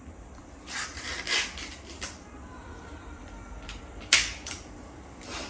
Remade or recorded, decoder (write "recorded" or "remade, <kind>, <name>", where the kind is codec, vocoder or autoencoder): remade, vocoder, BigVGAN v2